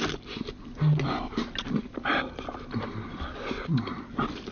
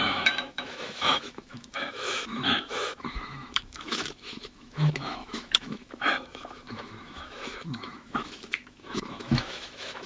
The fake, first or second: second